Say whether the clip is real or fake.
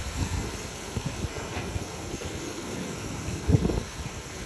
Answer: fake